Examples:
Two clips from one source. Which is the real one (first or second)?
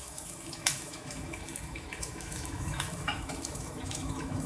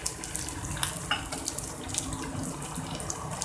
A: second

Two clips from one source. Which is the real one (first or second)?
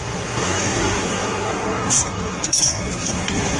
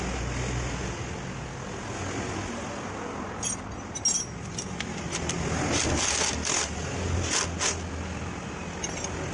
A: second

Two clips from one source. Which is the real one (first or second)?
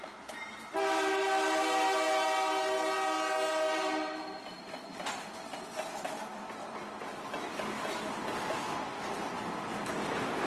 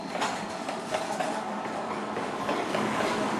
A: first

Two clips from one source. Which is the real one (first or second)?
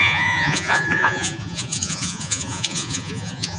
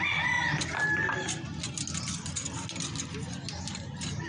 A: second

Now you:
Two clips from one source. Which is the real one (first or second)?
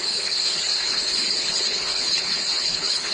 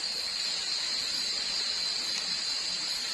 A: second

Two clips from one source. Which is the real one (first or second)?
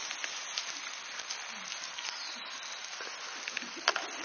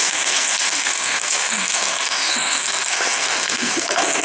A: first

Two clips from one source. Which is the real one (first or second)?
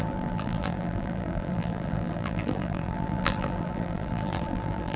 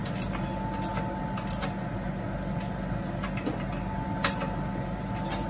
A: second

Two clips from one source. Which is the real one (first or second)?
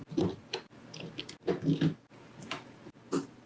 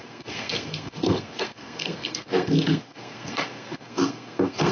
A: first